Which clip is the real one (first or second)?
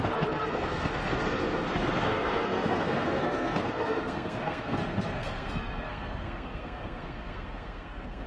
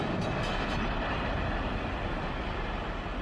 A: second